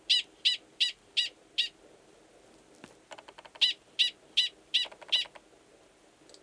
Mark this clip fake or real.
real